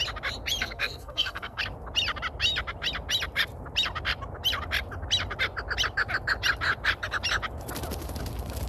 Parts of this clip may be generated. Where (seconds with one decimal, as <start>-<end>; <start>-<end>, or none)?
0.6-1.6